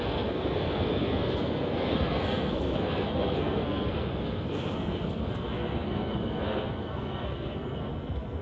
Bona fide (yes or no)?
no